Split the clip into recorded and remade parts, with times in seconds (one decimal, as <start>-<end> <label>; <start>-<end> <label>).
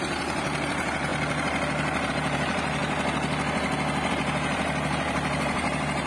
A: 0.0-1.1 remade; 1.1-2.1 recorded; 2.1-2.8 remade; 2.8-4.1 recorded; 4.1-6.1 remade